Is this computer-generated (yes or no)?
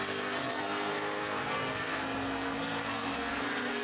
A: yes